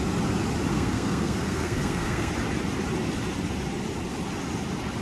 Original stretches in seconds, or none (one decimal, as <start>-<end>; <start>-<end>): 0.0-0.7; 2.3-5.0